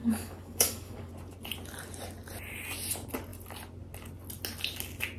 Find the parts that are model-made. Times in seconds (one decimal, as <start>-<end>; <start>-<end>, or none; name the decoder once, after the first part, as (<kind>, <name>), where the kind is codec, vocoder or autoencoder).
0.0-1.1 (codec, DAC)